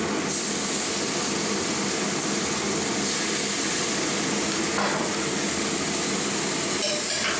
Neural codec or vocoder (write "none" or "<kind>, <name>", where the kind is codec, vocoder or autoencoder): none